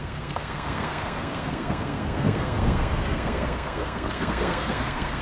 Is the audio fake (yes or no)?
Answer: yes